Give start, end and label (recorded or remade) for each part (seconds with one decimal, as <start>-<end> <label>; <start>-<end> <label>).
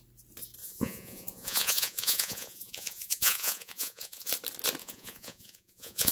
0.0-0.6 recorded; 0.6-4.3 remade; 4.3-4.8 recorded; 4.8-6.1 remade